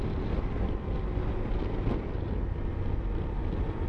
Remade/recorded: recorded